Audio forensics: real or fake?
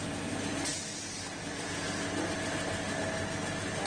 real